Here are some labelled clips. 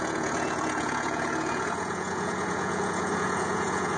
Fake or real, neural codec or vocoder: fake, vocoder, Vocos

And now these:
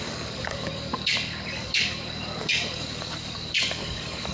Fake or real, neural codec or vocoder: fake, codec, DAC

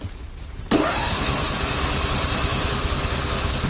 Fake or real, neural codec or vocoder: real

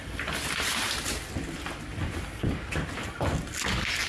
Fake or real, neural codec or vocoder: real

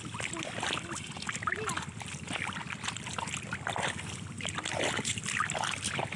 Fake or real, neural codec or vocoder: real